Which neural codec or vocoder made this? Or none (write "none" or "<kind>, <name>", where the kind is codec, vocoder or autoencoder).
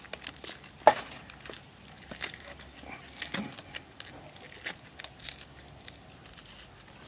none